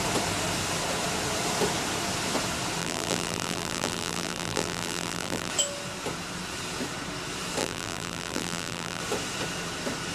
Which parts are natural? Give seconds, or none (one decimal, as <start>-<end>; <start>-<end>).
0.0-2.8; 5.5-7.6; 9.0-10.1